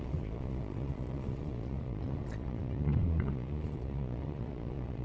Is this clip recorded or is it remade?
remade